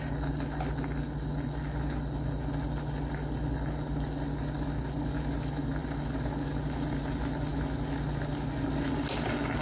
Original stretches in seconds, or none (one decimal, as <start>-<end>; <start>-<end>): 0.0-9.6